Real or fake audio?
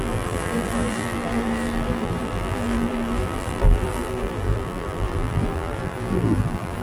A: fake